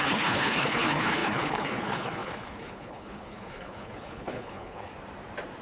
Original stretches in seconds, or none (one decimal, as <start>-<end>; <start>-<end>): 4.9-5.6